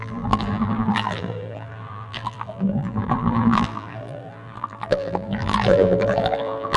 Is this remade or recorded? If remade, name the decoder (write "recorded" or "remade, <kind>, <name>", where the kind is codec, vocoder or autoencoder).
remade, vocoder, BigVGAN v2